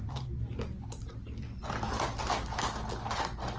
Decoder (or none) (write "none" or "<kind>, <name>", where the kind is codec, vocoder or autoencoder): none